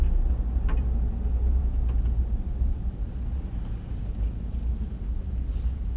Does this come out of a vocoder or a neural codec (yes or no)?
no